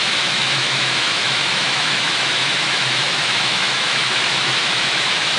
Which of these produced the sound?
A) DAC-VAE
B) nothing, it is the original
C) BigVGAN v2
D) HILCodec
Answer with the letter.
A